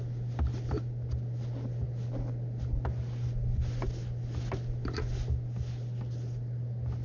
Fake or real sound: real